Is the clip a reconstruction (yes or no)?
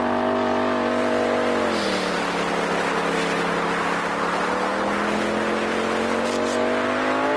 no